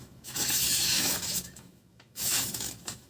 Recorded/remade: remade